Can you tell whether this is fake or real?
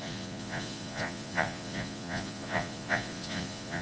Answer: fake